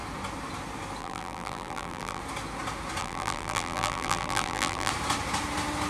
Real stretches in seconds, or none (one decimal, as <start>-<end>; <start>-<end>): 0.0-1.0; 2.2-3.0; 4.9-5.9